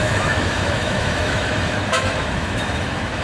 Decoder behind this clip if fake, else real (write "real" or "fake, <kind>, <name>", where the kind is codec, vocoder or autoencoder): fake, autoencoder, DAC-VAE